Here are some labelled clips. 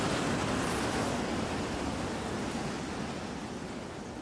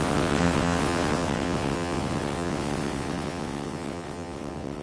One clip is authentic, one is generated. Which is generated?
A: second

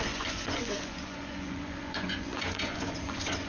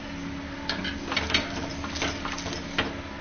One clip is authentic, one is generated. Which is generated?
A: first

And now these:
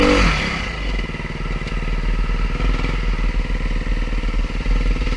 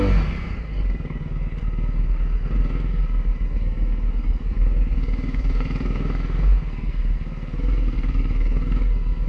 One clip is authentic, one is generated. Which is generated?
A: second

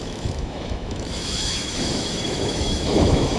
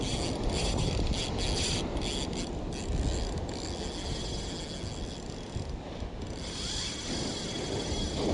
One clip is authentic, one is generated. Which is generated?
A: first